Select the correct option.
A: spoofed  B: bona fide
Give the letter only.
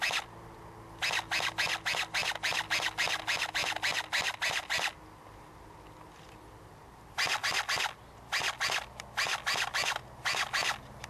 B